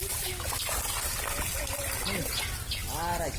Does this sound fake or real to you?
real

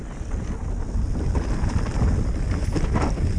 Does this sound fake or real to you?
real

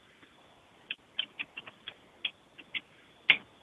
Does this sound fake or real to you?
real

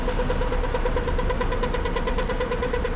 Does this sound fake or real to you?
real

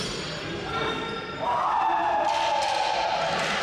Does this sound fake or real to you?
real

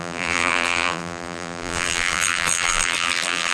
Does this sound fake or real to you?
fake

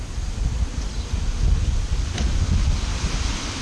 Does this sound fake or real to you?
real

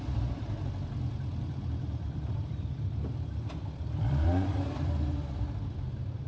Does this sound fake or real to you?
fake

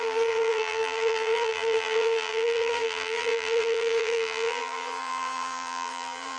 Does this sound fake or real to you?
fake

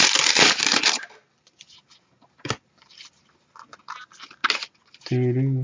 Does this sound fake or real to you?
real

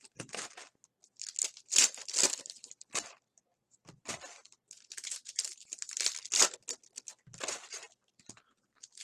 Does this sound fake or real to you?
real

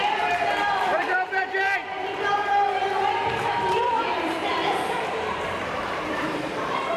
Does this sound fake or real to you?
fake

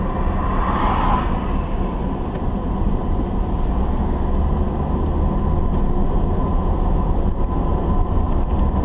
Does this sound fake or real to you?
real